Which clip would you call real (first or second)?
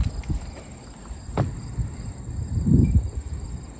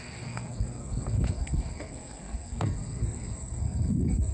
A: first